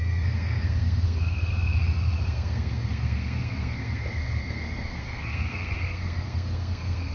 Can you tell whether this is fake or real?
fake